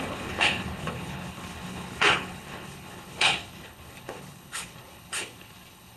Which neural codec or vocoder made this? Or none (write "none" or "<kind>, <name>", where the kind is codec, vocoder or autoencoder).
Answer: codec, HILCodec